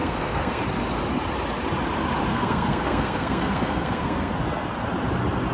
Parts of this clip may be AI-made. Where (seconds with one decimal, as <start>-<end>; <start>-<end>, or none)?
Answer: 0.0-0.6; 2.3-4.3